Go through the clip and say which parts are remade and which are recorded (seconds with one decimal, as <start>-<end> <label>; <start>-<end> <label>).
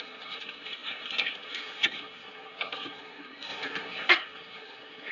0.0-5.1 remade